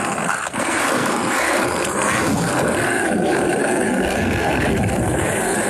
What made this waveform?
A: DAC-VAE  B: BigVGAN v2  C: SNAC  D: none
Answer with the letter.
C